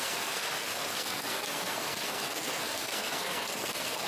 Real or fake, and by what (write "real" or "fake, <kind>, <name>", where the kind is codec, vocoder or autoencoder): fake, codec, SNAC